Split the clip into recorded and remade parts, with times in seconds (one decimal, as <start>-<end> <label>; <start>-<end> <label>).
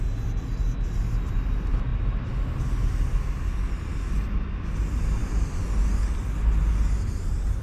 0.0-7.6 recorded